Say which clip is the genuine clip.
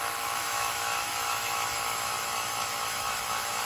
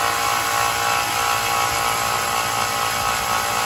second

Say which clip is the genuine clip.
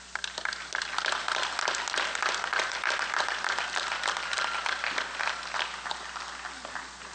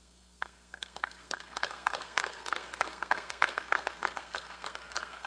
first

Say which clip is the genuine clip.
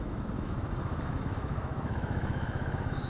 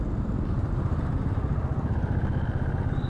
second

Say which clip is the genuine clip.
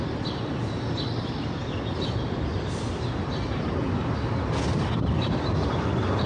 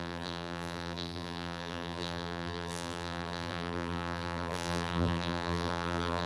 first